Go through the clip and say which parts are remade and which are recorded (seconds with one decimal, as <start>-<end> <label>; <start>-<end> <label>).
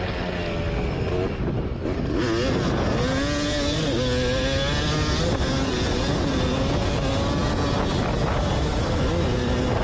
0.0-9.8 recorded